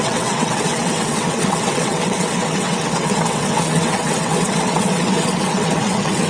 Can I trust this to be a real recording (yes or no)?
no